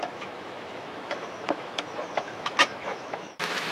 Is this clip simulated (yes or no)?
yes